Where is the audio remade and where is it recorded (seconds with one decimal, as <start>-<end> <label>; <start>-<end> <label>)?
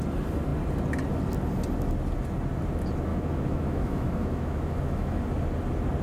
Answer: 0.0-3.1 recorded; 3.1-5.2 remade; 5.2-6.0 recorded